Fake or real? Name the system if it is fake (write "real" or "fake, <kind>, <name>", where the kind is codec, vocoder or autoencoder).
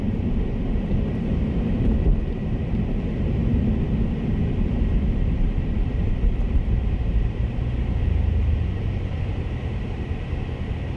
fake, vocoder, BigVGAN v2